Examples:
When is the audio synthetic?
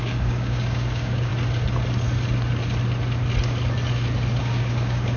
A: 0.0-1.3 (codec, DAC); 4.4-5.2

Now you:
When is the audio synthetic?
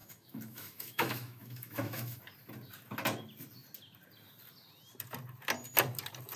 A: 0.0-2.2 (autoencoder, DAC-VAE)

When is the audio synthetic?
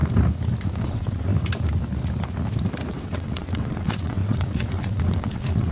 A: 0.8-1.3 (vocoder, WaveNeXt); 2.9-5.7